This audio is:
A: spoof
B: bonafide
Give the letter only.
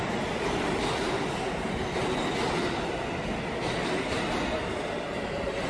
B